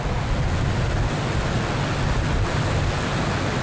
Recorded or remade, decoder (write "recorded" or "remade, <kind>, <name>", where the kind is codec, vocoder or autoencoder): recorded